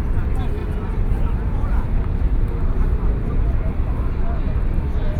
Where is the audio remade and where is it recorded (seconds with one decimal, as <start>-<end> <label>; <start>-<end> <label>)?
0.0-0.6 recorded; 0.6-3.7 remade; 3.7-5.2 recorded